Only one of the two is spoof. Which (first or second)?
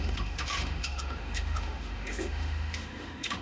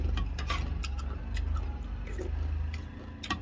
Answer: first